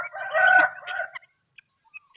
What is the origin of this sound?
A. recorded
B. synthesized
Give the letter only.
A